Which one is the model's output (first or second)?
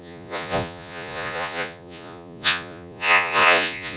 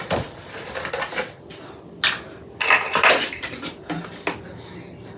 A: first